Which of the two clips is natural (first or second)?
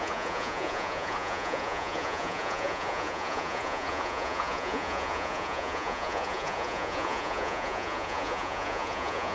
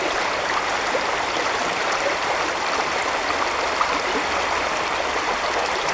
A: second